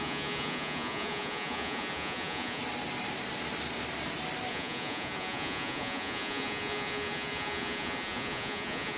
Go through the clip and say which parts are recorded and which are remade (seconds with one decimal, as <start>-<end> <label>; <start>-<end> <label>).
0.0-2.6 remade; 2.6-4.5 recorded; 4.5-9.0 remade

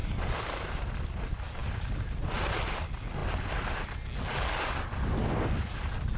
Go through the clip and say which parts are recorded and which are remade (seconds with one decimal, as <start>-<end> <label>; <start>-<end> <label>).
0.0-6.2 recorded